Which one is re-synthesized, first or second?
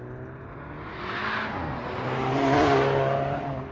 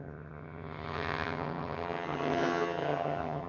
second